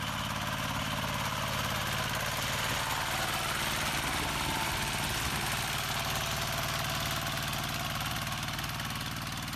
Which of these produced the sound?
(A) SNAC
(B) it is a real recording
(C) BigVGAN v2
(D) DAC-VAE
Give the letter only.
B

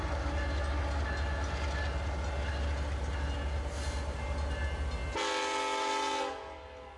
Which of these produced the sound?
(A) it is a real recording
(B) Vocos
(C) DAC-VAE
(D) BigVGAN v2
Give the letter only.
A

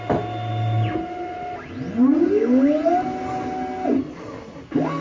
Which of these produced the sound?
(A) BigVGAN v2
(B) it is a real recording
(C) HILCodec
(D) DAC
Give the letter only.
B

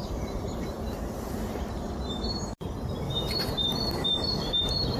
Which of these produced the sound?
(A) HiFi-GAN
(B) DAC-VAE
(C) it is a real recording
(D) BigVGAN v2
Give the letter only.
D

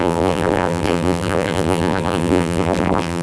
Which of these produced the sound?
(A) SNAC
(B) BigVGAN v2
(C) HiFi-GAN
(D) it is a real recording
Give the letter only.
B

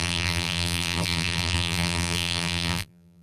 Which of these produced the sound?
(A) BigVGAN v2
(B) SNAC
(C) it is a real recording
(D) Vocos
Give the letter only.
A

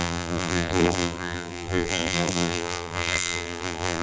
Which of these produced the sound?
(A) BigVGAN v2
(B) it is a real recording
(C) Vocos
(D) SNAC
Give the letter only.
A